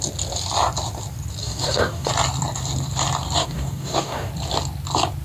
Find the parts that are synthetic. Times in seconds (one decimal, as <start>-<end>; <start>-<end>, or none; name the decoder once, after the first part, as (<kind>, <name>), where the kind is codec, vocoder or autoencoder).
1.4-2.1 (codec, DAC); 3.4-4.3